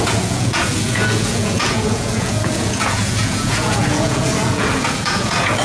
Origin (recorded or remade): remade